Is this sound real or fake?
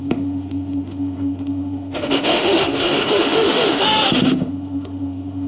fake